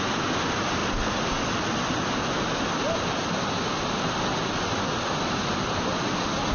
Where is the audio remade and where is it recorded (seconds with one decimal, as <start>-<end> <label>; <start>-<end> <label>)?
0.0-6.5 recorded